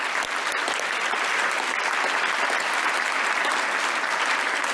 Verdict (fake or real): fake